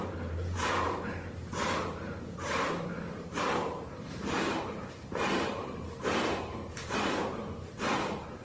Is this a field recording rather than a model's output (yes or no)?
no